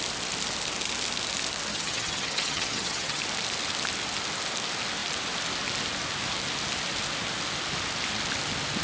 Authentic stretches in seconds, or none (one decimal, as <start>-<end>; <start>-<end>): 0.0-1.7; 3.2-8.8